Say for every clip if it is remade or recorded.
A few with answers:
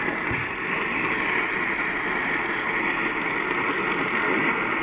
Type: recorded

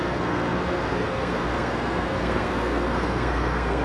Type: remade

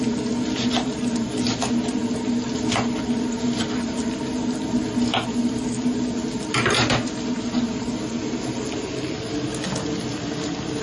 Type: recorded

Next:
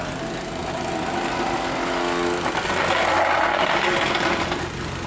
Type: recorded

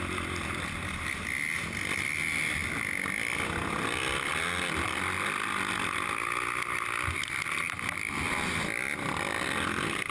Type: recorded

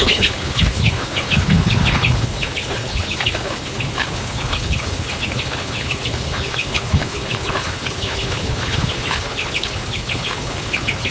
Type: remade